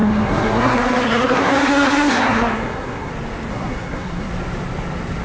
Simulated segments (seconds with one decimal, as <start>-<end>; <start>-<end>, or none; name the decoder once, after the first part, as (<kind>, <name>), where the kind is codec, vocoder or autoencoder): 0.0-3.1 (codec, SNAC); 3.5-4.3

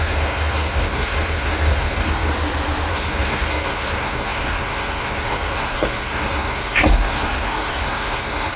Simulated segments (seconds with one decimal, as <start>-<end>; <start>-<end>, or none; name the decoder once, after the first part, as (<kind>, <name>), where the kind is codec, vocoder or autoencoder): 0.0-2.3 (codec, SNAC); 2.9-8.6